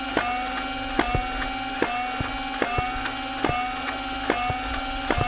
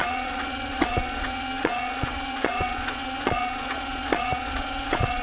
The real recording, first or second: first